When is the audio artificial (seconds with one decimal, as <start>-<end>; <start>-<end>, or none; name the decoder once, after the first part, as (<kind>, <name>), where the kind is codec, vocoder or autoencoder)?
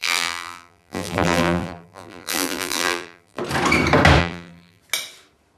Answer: 0.0-3.4 (vocoder, BigVGAN v2); 4.2-4.8